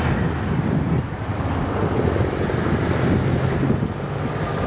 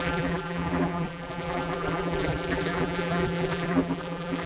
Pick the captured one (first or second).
first